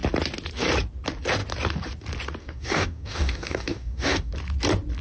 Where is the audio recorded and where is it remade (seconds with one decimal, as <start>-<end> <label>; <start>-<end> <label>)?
0.0-2.4 recorded; 2.4-4.3 remade; 4.3-5.0 recorded